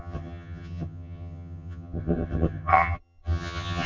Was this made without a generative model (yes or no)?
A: no